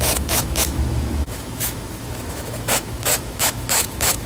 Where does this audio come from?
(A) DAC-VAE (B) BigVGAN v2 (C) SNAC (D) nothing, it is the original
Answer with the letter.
A